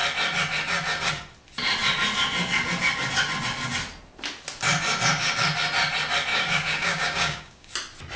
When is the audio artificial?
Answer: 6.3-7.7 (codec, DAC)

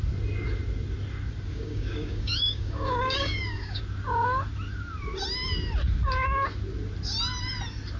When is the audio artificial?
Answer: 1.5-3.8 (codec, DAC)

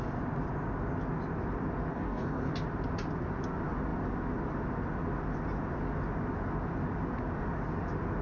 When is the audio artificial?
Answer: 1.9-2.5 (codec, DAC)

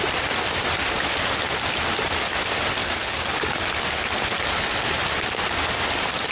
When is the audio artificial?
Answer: 2.8-3.6 (codec, DAC)

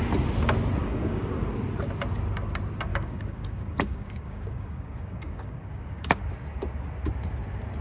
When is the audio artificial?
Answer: 0.8-1.3 (codec, DAC); 2.9-6.2